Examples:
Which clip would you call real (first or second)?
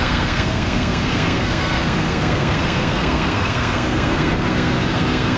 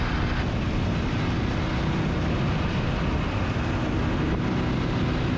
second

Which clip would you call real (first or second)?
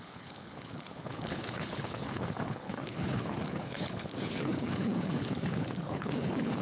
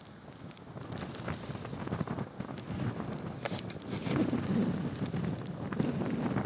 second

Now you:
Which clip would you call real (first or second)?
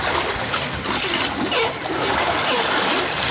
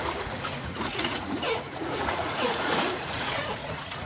first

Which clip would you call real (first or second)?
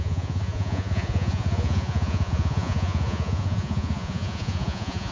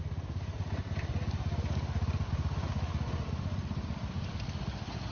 second